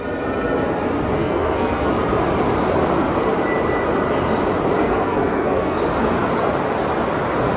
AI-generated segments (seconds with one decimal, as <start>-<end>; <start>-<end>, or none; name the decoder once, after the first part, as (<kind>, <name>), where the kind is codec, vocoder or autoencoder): 1.2-1.9 (codec, SNAC); 4.8-5.8